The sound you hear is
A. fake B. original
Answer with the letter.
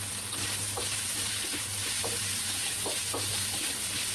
B